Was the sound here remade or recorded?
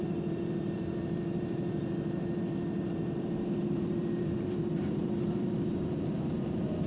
remade